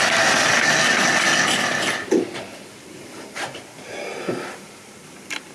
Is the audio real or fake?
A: real